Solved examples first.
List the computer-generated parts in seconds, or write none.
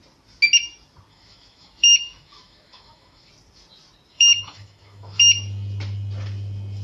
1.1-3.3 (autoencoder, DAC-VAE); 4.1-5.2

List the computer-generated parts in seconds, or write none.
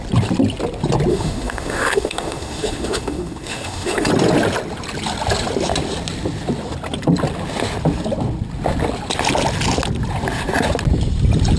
1.1-4.1 (autoencoder, DAC-VAE)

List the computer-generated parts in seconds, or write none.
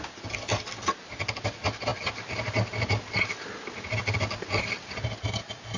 none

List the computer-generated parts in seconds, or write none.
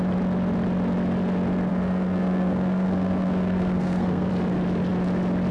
1.7-4.3 (codec, SNAC)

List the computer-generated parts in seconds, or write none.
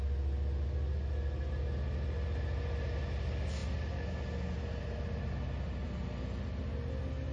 none